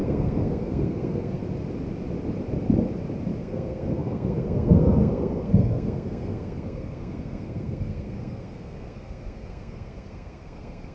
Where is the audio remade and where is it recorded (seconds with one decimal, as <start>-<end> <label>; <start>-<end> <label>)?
0.0-1.4 remade; 1.4-3.4 recorded; 3.4-10.9 remade